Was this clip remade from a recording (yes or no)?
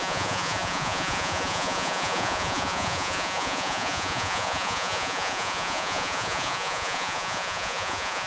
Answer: yes